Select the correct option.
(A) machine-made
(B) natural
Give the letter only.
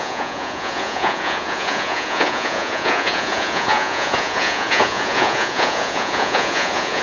A